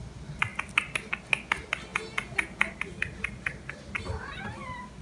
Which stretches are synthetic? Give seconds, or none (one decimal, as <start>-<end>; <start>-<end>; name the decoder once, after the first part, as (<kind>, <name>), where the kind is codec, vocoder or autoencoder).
1.9-2.7 (vocoder, Vocos)